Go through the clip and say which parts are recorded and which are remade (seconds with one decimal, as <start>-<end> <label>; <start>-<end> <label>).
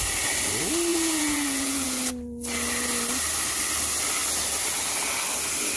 0.0-0.9 recorded; 0.9-2.0 remade; 2.0-5.8 recorded